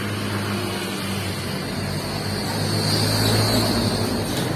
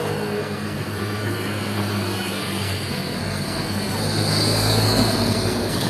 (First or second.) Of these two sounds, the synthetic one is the second